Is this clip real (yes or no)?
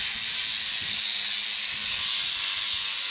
yes